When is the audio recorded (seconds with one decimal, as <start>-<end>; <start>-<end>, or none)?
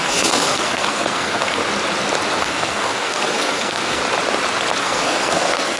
1.6-2.4; 4.0-4.8